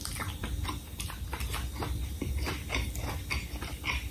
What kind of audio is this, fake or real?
real